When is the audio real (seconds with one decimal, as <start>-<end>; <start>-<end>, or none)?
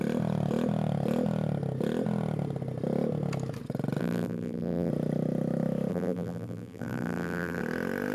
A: 0.0-4.0; 4.9-5.9; 7.6-8.1